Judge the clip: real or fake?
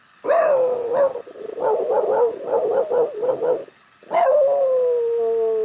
real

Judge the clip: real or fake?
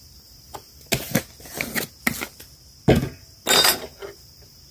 real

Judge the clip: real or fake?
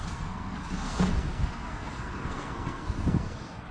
fake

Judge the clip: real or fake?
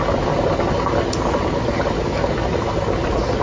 real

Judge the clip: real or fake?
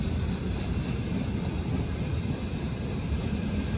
real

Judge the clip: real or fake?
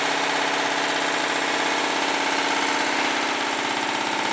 real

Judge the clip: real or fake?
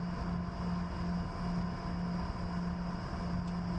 real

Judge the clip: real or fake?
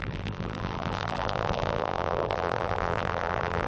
fake